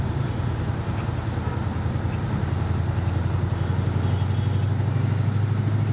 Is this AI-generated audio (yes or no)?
no